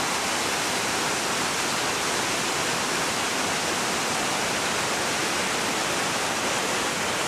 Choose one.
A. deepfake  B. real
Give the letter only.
B